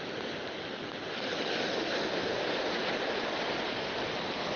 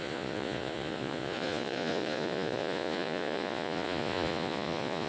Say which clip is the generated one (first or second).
second